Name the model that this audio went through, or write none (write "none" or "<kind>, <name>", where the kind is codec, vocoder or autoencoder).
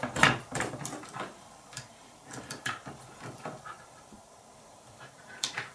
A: vocoder, BigVGAN v2